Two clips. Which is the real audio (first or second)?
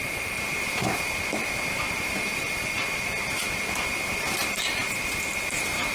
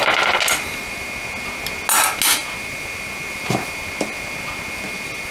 second